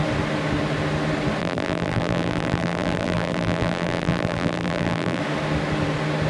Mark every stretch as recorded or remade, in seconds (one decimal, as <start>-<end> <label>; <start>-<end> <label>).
0.0-1.4 recorded; 1.4-5.2 remade; 5.2-6.3 recorded